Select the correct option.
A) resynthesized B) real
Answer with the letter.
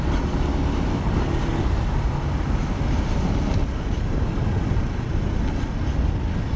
B